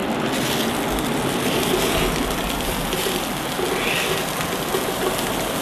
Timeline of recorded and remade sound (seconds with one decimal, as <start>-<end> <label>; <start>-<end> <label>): 0.0-5.6 recorded